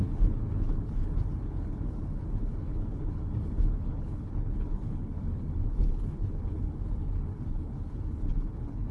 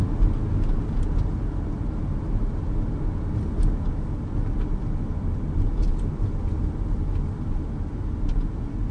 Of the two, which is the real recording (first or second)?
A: second